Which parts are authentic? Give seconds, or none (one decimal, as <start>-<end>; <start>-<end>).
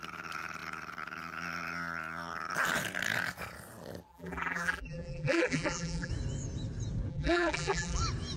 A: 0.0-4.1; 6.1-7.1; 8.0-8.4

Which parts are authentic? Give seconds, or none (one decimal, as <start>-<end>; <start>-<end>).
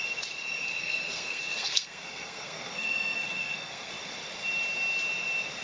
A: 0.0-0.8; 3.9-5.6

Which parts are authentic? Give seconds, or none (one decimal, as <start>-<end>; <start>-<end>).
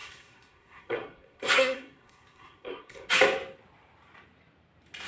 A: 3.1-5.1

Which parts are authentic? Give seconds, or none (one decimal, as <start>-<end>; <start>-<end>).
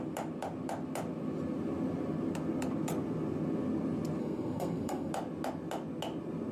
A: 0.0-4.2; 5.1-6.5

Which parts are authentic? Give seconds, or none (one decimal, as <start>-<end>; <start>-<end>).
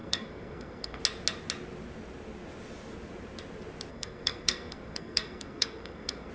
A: 1.0-3.9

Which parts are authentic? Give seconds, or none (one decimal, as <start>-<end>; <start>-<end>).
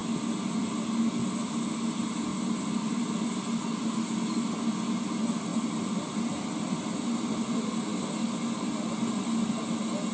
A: 0.0-2.3; 3.1-5.5; 8.0-10.1